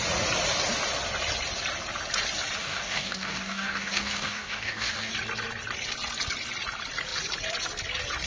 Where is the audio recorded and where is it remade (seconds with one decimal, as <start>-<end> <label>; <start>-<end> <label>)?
0.0-2.6 recorded; 2.6-5.1 remade; 5.1-8.3 recorded